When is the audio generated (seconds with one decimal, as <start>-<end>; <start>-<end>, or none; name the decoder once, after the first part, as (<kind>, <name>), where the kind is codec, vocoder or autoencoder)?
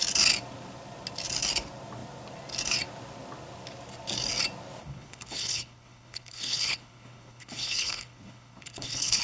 4.8-9.2 (codec, HILCodec)